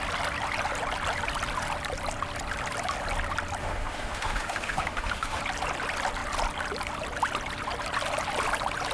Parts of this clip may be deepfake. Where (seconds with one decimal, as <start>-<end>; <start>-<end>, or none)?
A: 3.6-5.4